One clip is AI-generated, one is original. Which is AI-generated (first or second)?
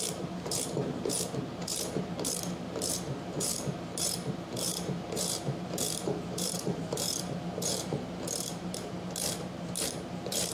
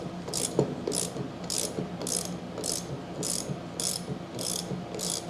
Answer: first